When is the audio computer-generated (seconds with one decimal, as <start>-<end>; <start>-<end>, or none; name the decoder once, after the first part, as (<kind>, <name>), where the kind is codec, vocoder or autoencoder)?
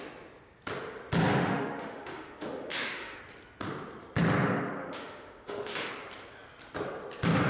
1.4-3.2 (autoencoder, DAC-VAE); 4.8-5.9